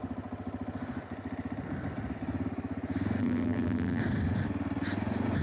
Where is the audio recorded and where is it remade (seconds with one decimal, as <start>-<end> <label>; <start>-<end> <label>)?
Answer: 0.0-3.2 recorded; 3.2-4.0 remade; 4.0-5.4 recorded